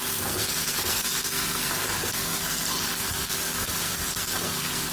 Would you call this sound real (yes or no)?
no